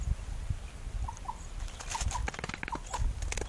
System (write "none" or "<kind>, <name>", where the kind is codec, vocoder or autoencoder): none